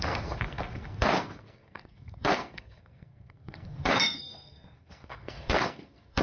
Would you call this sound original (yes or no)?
no